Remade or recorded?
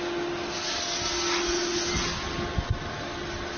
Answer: recorded